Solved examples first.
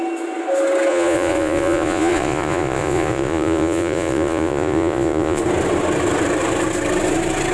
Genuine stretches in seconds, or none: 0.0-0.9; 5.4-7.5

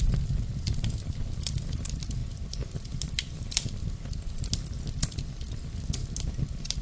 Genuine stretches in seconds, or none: 0.0-6.8

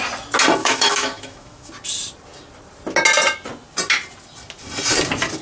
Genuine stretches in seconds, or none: 0.0-0.6; 1.7-5.4

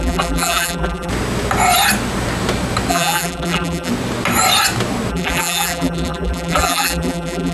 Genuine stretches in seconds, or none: 1.1-2.9; 3.9-5.1

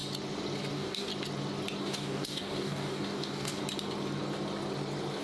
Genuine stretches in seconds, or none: 0.0-0.7; 1.1-1.8; 3.6-5.2